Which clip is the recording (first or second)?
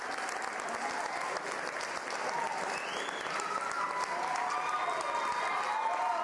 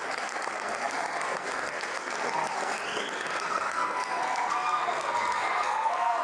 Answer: first